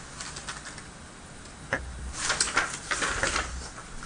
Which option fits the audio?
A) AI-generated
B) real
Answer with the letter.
B